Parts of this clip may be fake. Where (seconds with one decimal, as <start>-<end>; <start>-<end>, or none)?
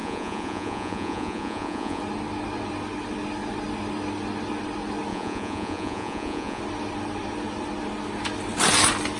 0.0-2.0; 5.1-6.6